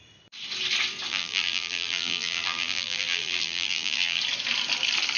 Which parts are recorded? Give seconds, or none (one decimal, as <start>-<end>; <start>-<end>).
0.0-1.1; 4.2-5.2